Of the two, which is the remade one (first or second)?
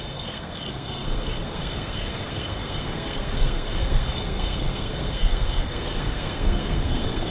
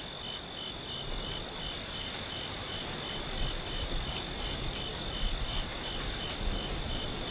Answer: first